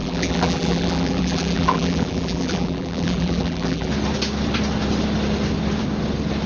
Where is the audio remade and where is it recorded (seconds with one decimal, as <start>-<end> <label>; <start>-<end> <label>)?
0.0-3.9 remade; 3.9-6.5 recorded